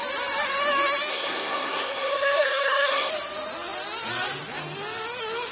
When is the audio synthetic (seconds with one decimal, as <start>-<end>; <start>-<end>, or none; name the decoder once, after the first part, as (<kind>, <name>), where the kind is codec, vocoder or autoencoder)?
1.1-3.1 (codec, SNAC)